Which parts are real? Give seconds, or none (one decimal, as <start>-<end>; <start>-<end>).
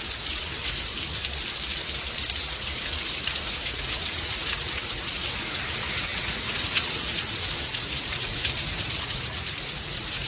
0.9-2.4